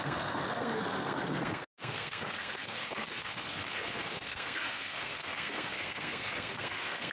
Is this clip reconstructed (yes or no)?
yes